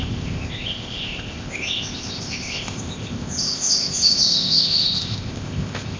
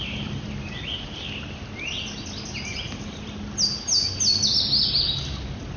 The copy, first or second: first